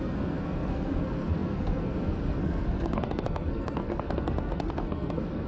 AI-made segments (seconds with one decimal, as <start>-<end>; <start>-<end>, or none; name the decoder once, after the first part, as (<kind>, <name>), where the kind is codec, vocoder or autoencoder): 0.0-5.5 (codec, SNAC)